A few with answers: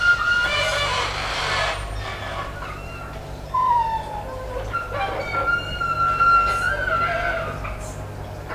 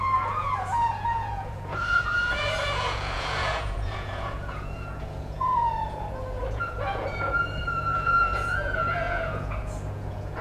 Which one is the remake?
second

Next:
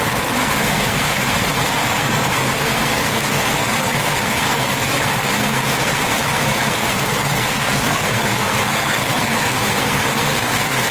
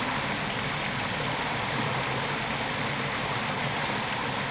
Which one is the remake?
first